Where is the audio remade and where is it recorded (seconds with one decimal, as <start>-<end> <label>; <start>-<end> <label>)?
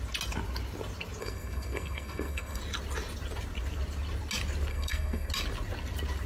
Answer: 0.0-1.2 recorded; 1.2-2.6 remade; 2.6-4.7 recorded; 4.7-5.3 remade; 5.3-6.3 recorded